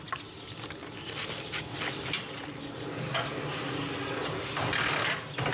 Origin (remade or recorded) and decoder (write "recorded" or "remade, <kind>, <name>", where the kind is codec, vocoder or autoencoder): recorded